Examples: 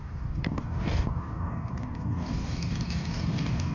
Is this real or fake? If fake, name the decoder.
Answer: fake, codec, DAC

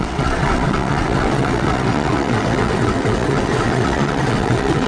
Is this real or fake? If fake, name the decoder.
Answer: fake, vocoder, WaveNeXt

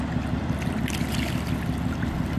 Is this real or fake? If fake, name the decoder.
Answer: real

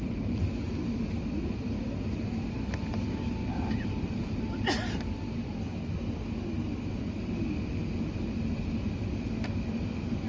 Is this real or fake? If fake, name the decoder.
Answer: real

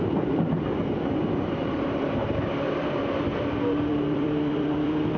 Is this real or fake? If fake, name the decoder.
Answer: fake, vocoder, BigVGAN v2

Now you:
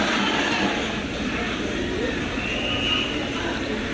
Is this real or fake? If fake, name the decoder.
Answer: real